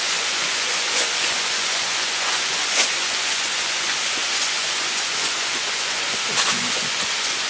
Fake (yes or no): yes